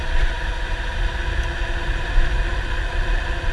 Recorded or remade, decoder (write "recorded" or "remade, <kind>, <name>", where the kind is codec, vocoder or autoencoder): recorded